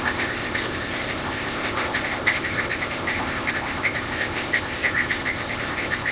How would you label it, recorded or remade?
remade